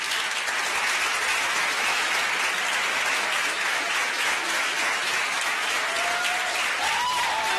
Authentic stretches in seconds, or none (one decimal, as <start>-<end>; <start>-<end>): 0.0-1.3; 2.1-2.9; 5.9-7.6